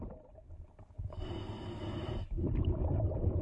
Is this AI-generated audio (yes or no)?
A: no